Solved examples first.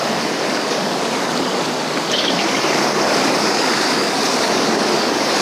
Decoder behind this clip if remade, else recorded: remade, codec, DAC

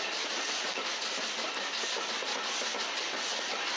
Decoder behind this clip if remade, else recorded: recorded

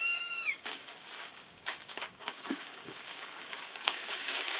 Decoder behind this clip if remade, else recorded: remade, codec, DAC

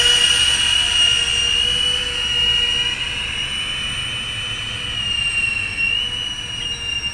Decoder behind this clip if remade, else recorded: recorded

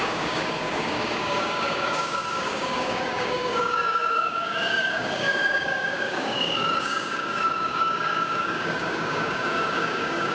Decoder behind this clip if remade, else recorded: remade, codec, DAC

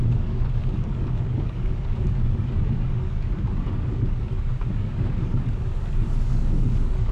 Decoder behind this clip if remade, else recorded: remade, codec, DAC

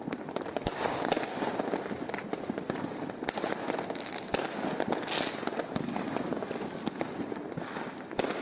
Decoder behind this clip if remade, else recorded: recorded